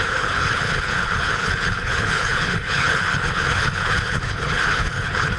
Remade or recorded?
remade